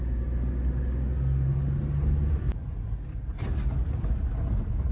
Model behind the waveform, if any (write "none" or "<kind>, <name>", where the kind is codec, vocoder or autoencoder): none